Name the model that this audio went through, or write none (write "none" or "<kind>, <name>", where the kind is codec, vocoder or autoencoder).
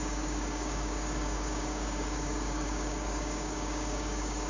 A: codec, DAC